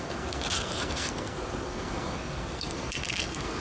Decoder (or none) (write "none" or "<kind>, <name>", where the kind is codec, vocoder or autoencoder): codec, SNAC